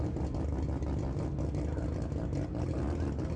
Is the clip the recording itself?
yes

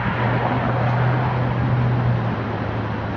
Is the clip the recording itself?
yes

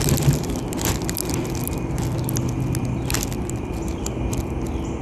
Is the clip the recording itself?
yes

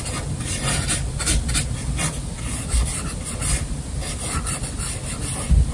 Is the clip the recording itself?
yes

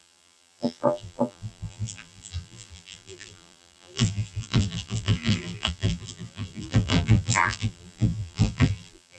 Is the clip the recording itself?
no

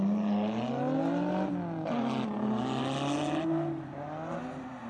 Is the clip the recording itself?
yes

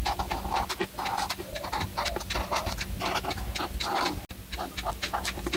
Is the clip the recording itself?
yes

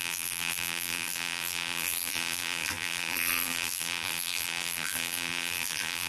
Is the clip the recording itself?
no